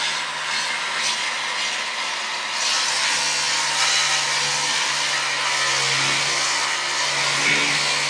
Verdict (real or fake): real